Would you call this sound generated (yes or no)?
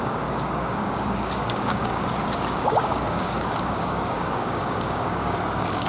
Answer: yes